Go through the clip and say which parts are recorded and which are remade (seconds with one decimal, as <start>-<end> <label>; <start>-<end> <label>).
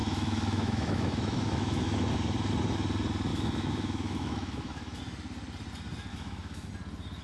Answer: 0.0-2.1 remade; 2.1-3.3 recorded; 3.3-5.0 remade; 5.0-6.1 recorded; 6.1-6.7 remade; 6.7-7.2 recorded